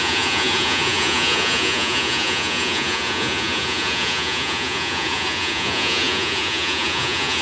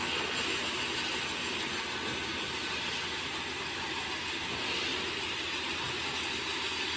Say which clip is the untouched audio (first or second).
second